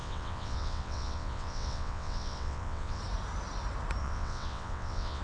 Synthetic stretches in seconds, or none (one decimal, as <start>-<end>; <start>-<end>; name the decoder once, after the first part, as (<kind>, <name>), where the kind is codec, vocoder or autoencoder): 0.0-3.0 (vocoder, WaveNeXt); 4.0-5.2